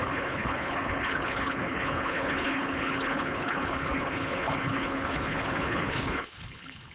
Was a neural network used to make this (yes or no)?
yes